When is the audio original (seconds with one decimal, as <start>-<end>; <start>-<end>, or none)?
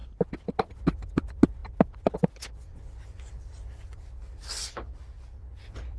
0.0-6.0